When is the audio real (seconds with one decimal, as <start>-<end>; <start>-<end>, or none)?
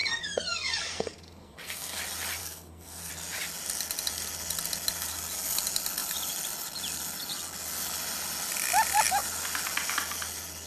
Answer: 2.0-2.4; 3.1-10.7